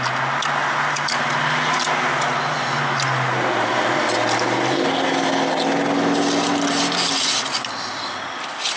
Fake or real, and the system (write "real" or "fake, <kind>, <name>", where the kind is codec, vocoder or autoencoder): real